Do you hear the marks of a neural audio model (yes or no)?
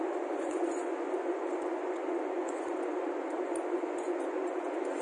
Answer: yes